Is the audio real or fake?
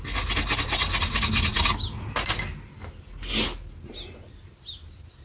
real